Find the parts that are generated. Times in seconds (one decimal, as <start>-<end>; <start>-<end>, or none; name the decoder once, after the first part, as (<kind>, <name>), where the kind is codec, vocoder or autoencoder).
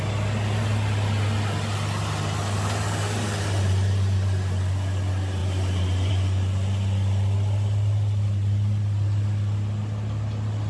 none